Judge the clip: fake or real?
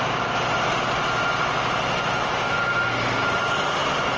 real